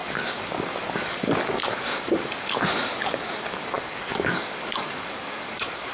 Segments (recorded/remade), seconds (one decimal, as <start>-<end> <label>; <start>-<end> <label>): 0.0-5.9 remade